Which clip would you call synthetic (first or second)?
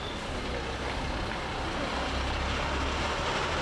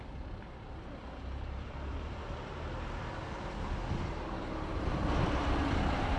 second